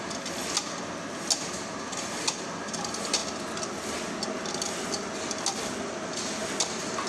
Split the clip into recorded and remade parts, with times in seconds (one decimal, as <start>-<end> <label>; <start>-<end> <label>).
0.0-7.1 recorded